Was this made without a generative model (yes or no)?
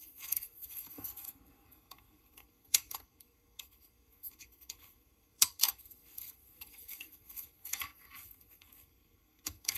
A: no